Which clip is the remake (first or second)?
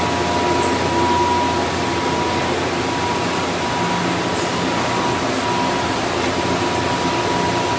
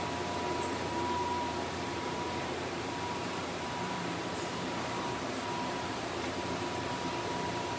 second